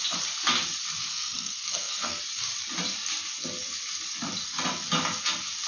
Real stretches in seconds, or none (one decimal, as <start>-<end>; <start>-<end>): 0.0-1.1; 2.2-5.7